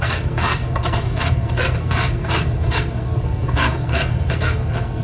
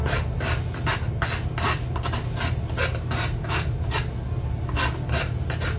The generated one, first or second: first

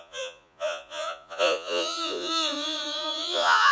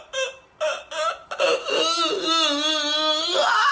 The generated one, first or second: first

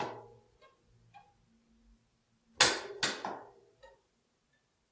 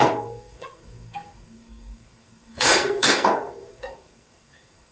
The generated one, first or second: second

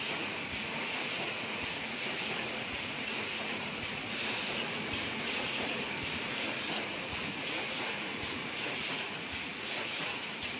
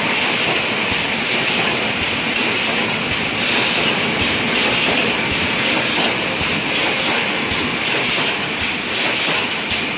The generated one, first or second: first